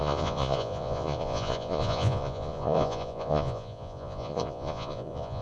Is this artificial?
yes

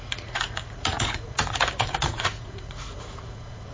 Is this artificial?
yes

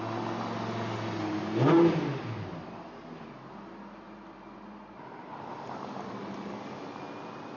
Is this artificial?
no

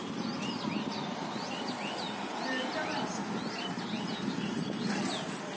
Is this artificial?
no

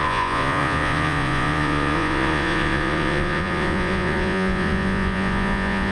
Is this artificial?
yes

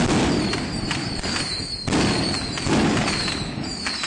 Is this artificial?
no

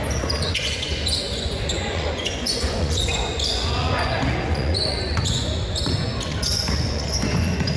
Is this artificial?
yes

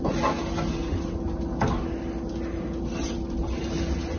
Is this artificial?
no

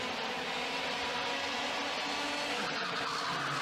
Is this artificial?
no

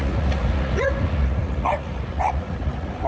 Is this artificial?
yes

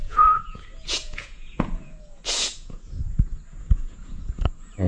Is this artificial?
yes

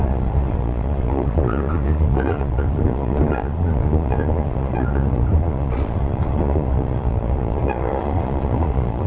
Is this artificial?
yes